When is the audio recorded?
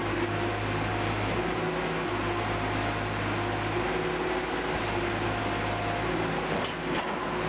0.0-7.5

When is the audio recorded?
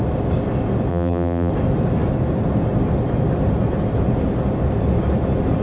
0.0-0.9; 1.5-5.6